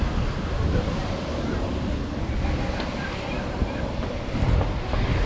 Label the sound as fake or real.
real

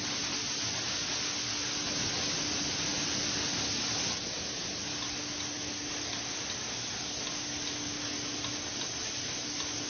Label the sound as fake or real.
real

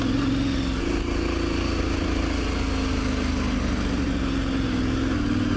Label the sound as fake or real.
real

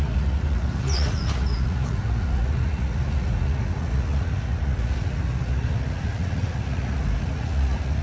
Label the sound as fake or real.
fake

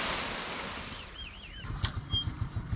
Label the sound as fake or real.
real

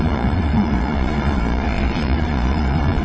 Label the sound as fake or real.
fake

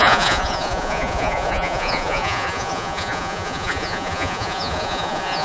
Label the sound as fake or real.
fake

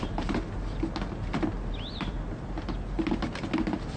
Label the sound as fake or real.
real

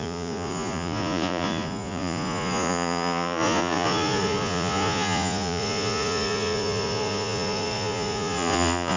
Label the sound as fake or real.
fake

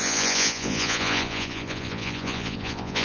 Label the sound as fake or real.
fake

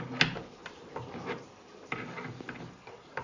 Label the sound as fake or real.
real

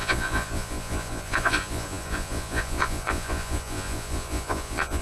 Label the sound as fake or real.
fake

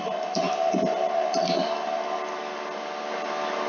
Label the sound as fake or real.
real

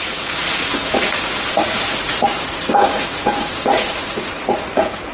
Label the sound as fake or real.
fake